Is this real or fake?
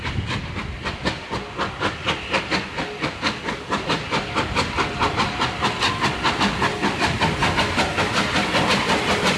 real